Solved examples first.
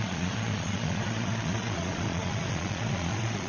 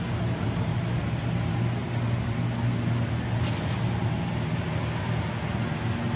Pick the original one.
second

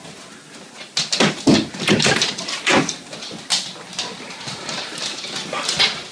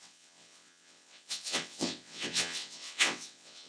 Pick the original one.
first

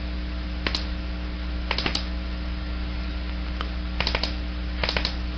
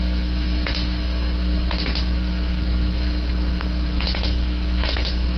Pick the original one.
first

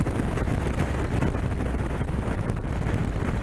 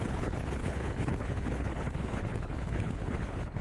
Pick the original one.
first